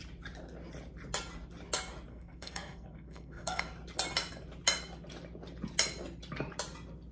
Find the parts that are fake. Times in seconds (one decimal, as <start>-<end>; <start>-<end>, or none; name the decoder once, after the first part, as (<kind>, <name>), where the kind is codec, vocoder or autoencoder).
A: 2.1-3.6 (codec, SNAC)